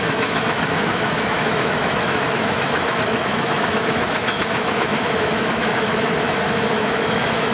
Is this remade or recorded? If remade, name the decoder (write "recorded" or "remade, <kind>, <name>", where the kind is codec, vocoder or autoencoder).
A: remade, autoencoder, DAC-VAE